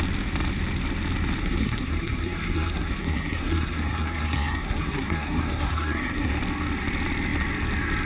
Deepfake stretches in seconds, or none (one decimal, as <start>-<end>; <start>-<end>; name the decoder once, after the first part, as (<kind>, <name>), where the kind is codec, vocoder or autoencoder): 1.4-6.3 (codec, SNAC)